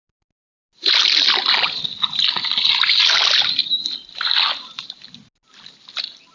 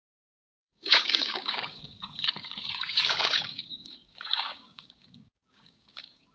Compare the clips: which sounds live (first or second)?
first